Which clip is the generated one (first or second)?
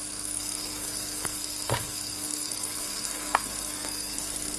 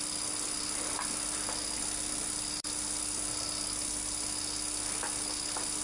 first